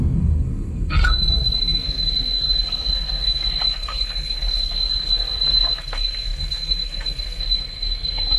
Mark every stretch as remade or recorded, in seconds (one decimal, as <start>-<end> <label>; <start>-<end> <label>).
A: 0.0-8.4 remade

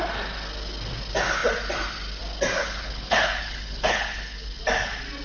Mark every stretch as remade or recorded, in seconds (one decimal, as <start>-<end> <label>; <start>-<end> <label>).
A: 0.0-2.6 recorded; 2.6-4.6 remade; 4.6-5.2 recorded

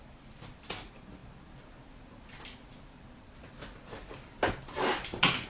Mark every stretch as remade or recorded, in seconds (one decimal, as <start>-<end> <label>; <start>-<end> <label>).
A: 0.0-5.5 recorded

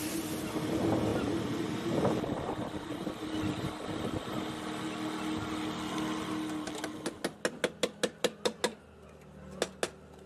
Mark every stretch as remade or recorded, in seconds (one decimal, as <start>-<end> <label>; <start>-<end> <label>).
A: 0.0-10.3 recorded

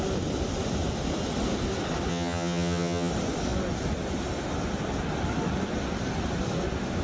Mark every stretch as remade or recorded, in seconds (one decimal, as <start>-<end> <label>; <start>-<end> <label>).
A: 0.0-2.1 recorded; 2.1-3.1 remade; 3.1-7.0 recorded

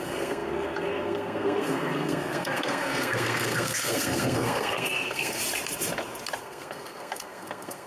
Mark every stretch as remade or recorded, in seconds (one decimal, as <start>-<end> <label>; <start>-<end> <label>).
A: 0.0-5.4 remade; 5.4-6.4 recorded; 6.4-7.9 remade

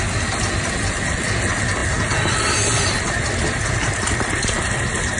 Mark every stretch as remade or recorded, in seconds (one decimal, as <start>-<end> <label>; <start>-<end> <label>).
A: 0.0-5.2 recorded